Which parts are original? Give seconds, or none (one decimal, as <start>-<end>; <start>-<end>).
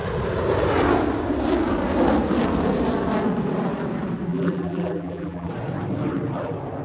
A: 0.0-4.3; 5.5-6.8